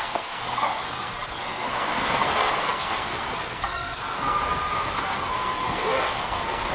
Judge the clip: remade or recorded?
remade